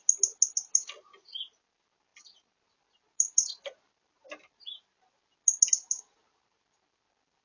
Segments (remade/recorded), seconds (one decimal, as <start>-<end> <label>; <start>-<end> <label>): 0.0-7.4 recorded